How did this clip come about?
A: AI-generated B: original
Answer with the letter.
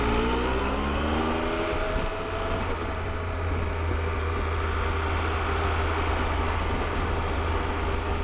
B